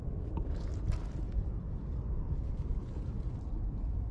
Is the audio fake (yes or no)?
no